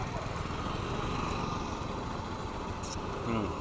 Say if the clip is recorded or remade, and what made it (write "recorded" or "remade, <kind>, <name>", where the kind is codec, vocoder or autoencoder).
recorded